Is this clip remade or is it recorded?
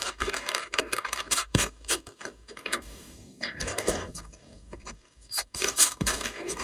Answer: remade